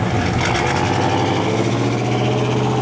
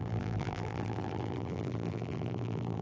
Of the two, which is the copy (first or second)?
second